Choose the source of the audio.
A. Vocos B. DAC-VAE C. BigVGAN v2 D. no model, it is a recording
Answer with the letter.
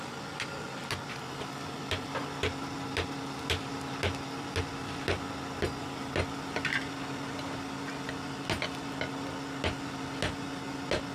D